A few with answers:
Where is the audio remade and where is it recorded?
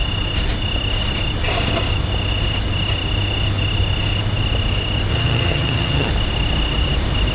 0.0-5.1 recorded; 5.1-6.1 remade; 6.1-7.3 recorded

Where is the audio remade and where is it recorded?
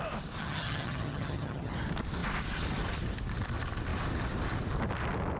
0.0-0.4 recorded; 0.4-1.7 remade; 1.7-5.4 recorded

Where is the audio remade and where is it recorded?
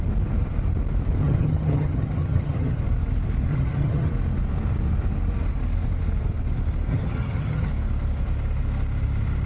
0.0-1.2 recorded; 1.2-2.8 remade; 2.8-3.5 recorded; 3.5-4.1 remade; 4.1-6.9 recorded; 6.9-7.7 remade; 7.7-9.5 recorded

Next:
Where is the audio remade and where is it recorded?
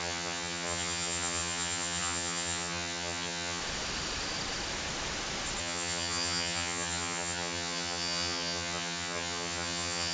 0.0-3.6 remade; 3.6-5.6 recorded; 5.6-10.1 remade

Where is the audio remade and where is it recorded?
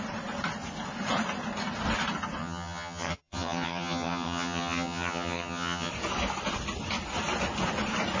0.0-2.4 recorded; 2.4-5.9 remade; 5.9-8.2 recorded